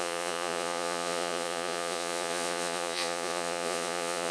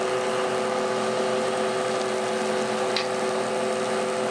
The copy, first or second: first